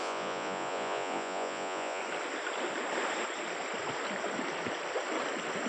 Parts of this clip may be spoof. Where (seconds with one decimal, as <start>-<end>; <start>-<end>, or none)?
0.0-2.0